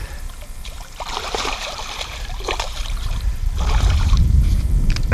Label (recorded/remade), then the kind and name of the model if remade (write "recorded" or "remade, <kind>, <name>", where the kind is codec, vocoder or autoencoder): remade, vocoder, BigVGAN v2